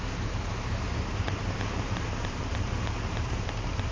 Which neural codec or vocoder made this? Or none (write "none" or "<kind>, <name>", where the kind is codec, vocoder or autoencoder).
vocoder, BigVGAN v2